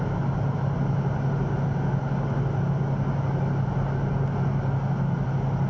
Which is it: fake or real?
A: real